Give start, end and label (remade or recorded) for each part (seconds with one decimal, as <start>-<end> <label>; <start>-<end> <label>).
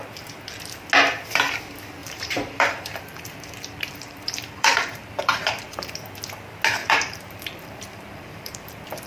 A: 0.0-2.0 recorded; 2.0-5.9 remade; 5.9-6.8 recorded; 6.8-8.7 remade; 8.7-9.1 recorded